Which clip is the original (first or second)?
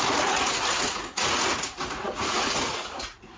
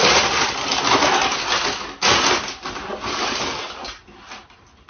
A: second